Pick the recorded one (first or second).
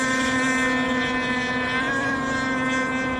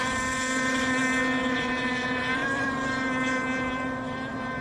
first